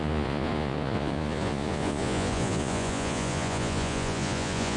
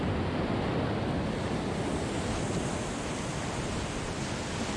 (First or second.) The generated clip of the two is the first